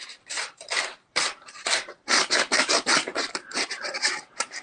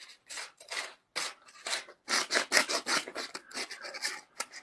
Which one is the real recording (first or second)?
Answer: second